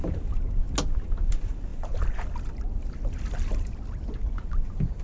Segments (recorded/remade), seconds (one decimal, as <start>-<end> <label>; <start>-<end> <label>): 0.0-5.0 recorded